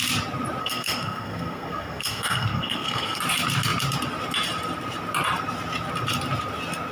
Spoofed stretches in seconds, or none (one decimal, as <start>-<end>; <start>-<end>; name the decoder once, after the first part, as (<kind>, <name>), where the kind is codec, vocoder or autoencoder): 0.6-3.2 (codec, SNAC)